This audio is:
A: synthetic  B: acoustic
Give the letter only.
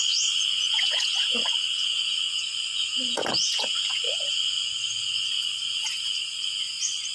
A